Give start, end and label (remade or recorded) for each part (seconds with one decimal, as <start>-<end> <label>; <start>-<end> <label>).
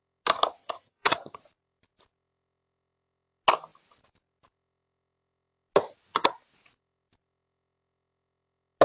0.0-0.6 recorded; 0.6-1.4 remade; 1.4-8.8 recorded